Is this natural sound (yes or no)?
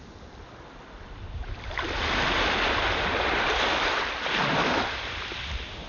yes